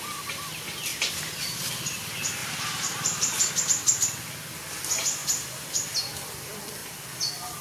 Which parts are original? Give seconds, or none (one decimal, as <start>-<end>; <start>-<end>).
0.0-0.9; 1.7-2.4; 3.5-5.2; 6.0-7.6